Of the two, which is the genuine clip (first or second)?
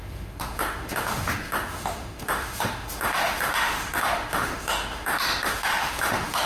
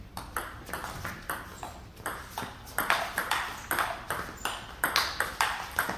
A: second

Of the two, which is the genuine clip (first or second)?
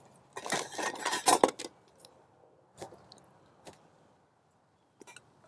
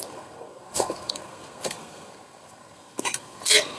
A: first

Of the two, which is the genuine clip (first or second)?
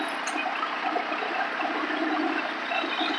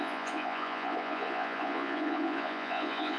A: first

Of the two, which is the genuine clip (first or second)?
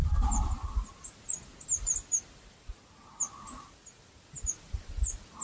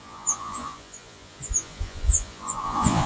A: first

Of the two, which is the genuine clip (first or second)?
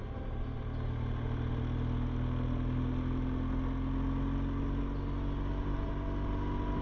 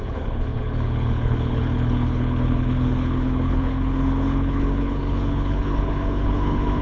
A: first